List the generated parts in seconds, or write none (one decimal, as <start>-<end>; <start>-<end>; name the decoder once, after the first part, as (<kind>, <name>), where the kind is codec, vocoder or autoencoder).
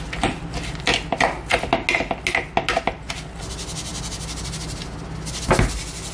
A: none